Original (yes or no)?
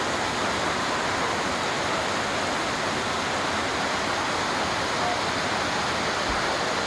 yes